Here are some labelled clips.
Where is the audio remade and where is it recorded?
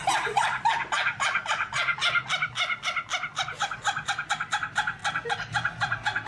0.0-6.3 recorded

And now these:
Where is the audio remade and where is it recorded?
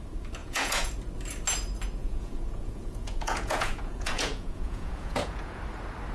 0.0-0.4 recorded; 0.4-0.9 remade; 0.9-2.0 recorded; 2.0-5.6 remade; 5.6-6.1 recorded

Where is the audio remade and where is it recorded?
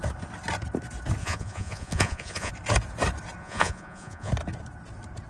0.0-1.2 recorded; 1.2-2.5 remade; 2.5-3.4 recorded; 3.4-4.3 remade; 4.3-5.3 recorded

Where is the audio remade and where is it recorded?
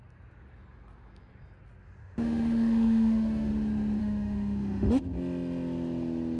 0.0-2.0 recorded; 2.0-3.5 remade; 3.5-4.0 recorded; 4.0-5.0 remade; 5.0-6.4 recorded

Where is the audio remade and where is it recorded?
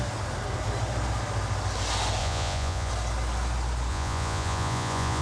0.0-2.2 recorded; 2.2-2.9 remade; 2.9-3.9 recorded; 3.9-5.2 remade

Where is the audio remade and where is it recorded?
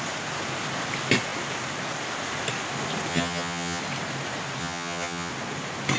0.0-3.1 recorded; 3.1-3.8 remade; 3.8-4.6 recorded; 4.6-5.3 remade; 5.3-6.0 recorded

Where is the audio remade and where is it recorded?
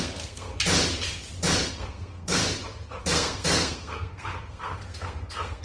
0.0-0.5 remade; 0.5-1.7 recorded; 1.7-2.4 remade; 2.4-3.0 recorded; 3.0-5.6 remade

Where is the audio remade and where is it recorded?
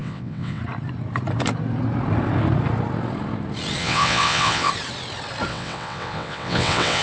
0.0-0.6 remade; 0.6-3.8 recorded; 3.8-4.7 remade; 4.7-5.5 recorded; 5.5-7.0 remade